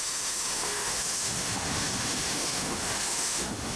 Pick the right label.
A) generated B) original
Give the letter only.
A